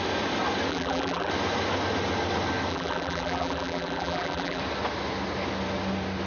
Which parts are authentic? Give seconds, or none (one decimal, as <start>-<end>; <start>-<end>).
0.0-0.7; 1.3-2.7; 4.6-6.3